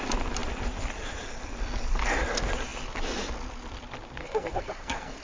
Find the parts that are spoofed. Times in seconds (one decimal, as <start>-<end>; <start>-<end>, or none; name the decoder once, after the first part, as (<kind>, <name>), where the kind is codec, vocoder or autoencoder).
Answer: 4.2-5.2 (codec, SNAC)